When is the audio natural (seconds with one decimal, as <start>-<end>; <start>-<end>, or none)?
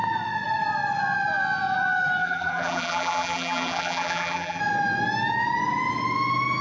0.0-2.2; 4.6-6.6